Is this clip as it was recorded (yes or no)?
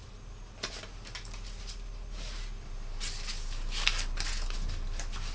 yes